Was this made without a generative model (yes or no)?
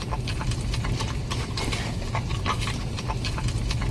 no